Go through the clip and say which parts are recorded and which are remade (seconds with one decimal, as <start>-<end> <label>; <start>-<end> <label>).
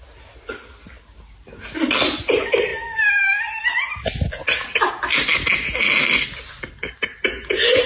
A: 0.0-7.9 recorded